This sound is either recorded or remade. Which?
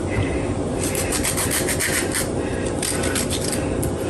recorded